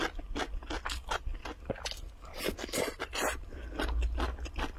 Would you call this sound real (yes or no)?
yes